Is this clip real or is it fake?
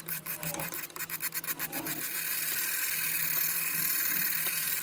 real